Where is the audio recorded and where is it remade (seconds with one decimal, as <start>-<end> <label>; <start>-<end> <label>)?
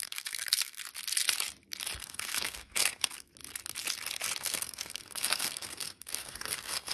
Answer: 0.0-0.8 remade; 0.8-2.0 recorded; 2.0-3.3 remade; 3.3-4.4 recorded; 4.4-6.9 remade